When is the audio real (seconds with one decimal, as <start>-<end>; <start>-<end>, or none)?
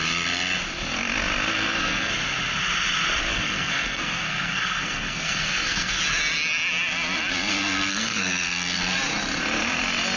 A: 0.0-1.5; 2.1-3.3; 6.0-7.5; 8.8-10.2